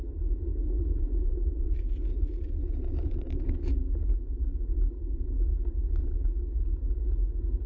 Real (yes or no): yes